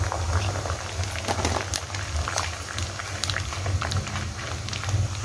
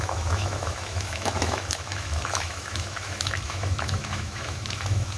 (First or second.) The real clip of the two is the first